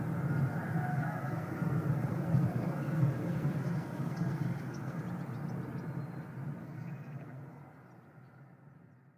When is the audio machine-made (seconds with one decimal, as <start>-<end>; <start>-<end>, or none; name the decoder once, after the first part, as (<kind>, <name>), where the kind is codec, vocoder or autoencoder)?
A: 0.9-5.0 (codec, SNAC); 6.6-7.6